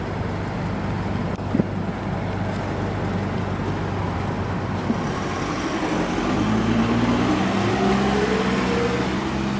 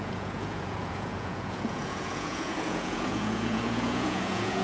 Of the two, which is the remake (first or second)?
second